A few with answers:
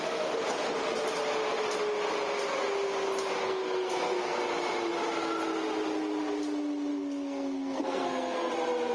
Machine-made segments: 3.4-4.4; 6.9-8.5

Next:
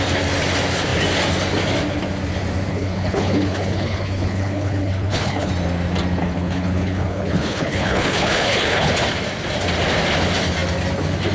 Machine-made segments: 2.7-5.5; 6.2-8.9